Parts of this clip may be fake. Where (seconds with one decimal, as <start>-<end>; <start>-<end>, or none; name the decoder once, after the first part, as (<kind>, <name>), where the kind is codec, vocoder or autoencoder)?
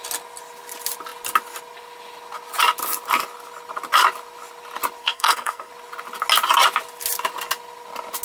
5.0-5.7 (codec, SNAC)